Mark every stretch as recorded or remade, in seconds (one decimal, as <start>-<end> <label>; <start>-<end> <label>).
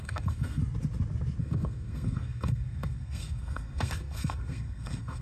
0.0-0.6 remade; 0.6-1.4 recorded; 1.4-5.2 remade